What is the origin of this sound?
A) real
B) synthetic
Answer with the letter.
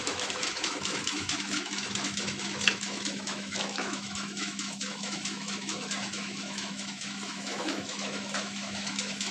B